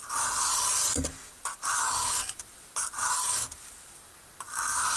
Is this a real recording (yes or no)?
yes